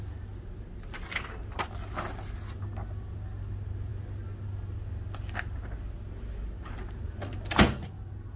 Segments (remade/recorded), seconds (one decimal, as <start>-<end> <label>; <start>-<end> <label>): 0.0-8.4 recorded